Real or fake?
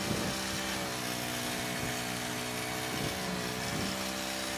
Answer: real